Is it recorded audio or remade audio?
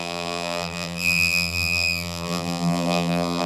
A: remade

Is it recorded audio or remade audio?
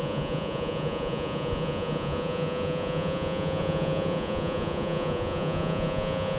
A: remade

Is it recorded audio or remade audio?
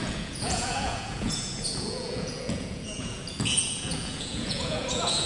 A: remade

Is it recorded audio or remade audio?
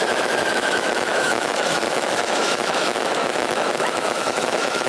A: remade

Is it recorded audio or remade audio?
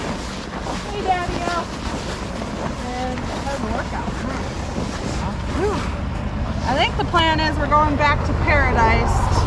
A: recorded